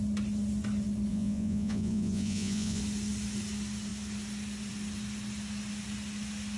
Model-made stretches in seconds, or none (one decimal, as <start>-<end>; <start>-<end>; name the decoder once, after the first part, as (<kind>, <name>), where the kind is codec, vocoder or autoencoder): 1.1-2.8 (vocoder, Vocos)